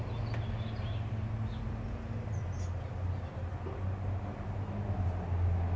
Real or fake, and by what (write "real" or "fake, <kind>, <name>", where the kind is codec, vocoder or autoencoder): real